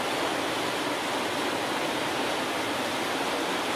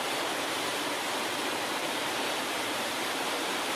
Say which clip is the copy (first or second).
second